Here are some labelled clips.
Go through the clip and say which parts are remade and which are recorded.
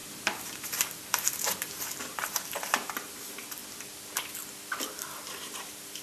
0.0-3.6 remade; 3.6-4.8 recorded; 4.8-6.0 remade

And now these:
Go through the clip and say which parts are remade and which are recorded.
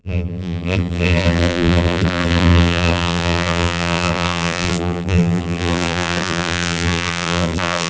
0.0-7.9 remade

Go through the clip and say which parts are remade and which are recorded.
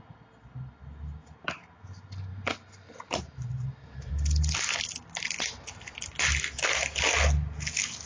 0.0-1.2 recorded; 1.2-1.8 remade; 1.8-2.3 recorded; 2.3-4.1 remade; 4.1-8.1 recorded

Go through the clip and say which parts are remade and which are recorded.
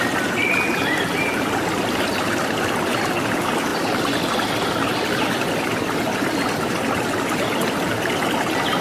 0.0-8.8 recorded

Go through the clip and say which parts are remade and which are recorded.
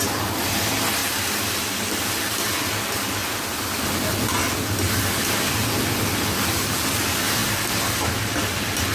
0.0-8.9 recorded